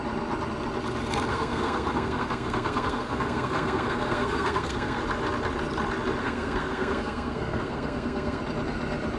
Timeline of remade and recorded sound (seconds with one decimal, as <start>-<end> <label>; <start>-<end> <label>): 0.0-1.3 recorded; 1.3-5.0 remade; 5.0-6.2 recorded; 6.2-8.4 remade; 8.4-9.2 recorded